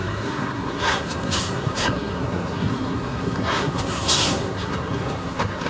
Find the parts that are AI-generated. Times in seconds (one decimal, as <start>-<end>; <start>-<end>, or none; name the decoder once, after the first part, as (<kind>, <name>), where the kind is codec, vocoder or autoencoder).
0.0-5.7 (codec, SNAC)

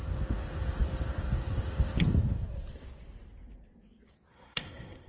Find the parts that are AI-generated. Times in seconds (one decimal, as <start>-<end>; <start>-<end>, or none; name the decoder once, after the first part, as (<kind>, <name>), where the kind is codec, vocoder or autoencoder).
4.3-5.1 (codec, SNAC)

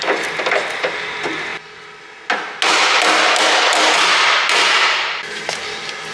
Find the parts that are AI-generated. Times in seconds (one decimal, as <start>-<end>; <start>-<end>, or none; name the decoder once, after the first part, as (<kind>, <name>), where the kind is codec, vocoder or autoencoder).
none

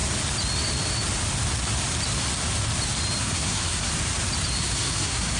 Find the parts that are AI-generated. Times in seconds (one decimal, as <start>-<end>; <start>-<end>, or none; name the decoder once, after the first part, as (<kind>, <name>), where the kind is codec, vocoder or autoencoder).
3.2-3.9 (codec, SNAC); 4.6-5.4

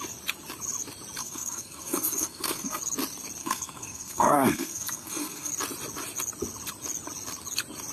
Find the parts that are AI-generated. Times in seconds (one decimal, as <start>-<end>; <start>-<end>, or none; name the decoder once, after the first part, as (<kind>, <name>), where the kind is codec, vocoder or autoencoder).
1.2-2.8 (codec, SNAC); 3.4-5.5

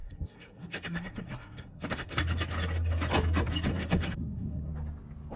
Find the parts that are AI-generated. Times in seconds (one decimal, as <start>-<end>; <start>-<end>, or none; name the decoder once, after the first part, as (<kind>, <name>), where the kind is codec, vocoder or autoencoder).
0.0-2.2 (codec, SNAC); 3.7-4.7

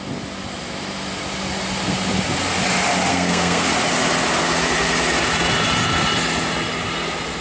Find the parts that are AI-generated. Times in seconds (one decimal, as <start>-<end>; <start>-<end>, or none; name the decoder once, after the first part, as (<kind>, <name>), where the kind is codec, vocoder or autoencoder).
3.1-3.7 (codec, SNAC)

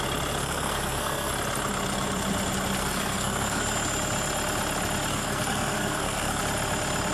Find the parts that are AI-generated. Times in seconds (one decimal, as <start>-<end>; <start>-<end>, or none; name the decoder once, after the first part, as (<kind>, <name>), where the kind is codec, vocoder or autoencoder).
0.4-1.3 (codec, SNAC); 2.8-3.6; 5.1-6.4